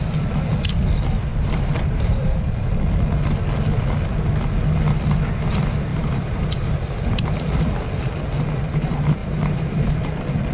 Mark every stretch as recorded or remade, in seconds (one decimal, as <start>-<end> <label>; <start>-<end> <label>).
0.0-1.3 recorded; 1.3-2.7 remade; 2.7-5.9 recorded; 5.9-7.7 remade; 7.7-9.2 recorded; 9.2-9.9 remade; 9.9-10.5 recorded